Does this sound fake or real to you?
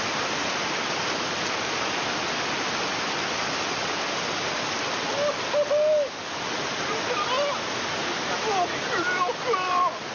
real